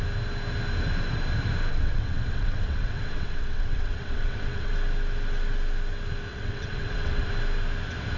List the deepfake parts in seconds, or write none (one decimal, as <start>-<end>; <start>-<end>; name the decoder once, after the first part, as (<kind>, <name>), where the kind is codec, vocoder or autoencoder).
1.7-4.7 (vocoder, WaveNeXt); 6.3-7.3